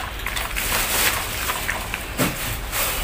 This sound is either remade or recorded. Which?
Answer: recorded